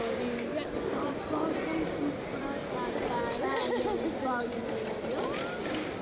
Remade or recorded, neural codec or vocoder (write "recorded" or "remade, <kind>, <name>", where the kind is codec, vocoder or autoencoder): recorded